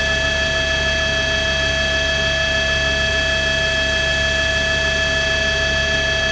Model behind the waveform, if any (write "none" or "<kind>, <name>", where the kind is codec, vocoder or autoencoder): none